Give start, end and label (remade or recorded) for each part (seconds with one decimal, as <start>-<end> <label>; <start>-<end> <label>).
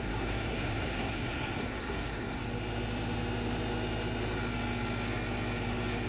0.0-2.4 remade; 2.4-6.1 recorded